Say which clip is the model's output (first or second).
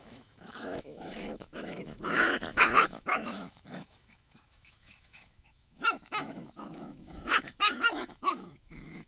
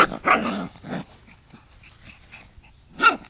first